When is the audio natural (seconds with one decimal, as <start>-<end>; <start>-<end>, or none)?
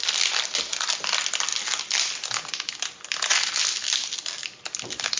0.0-5.2